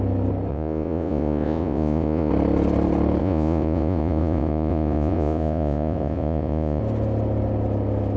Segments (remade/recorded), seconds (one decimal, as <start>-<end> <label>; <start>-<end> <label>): 0.0-0.5 recorded; 0.5-2.3 remade; 2.3-3.2 recorded; 3.2-6.8 remade; 6.8-8.2 recorded